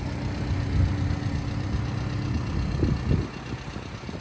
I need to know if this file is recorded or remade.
recorded